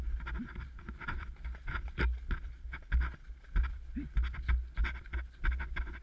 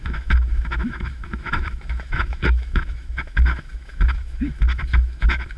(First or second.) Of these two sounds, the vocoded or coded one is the second